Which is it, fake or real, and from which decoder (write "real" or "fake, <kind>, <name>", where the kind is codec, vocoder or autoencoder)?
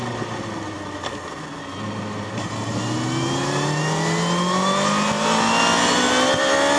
real